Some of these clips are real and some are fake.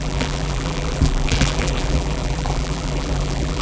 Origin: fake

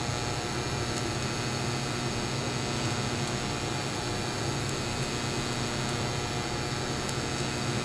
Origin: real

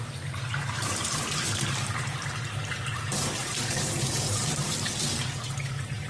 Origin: fake